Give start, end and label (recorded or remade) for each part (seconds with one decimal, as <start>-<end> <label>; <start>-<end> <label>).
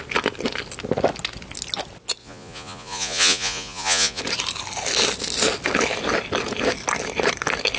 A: 0.0-2.2 recorded; 2.2-4.2 remade; 4.2-7.8 recorded